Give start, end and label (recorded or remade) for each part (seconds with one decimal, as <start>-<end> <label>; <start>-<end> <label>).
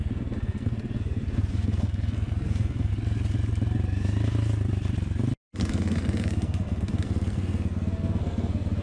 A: 0.0-2.9 remade; 2.9-5.6 recorded; 5.6-8.8 remade